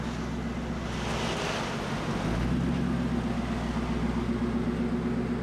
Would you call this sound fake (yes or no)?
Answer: no